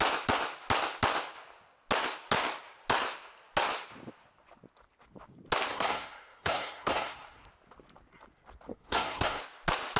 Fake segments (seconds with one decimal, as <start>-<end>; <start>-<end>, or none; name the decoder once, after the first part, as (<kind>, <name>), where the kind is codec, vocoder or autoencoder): 5.7-7.5 (codec, SNAC); 8.7-9.4